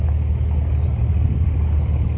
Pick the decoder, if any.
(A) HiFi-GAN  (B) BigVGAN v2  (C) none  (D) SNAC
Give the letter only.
C